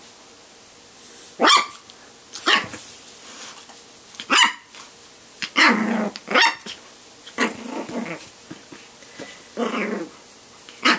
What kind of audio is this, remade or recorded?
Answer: recorded